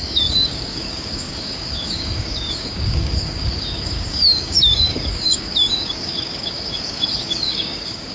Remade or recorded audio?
remade